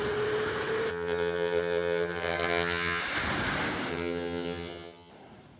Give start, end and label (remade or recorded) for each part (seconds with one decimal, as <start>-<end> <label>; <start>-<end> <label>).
0.0-0.9 recorded; 0.9-3.0 remade; 3.0-3.9 recorded; 3.9-5.1 remade; 5.1-5.6 recorded